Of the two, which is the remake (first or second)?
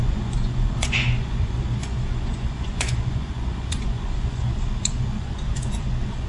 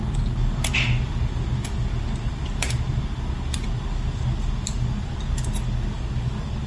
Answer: first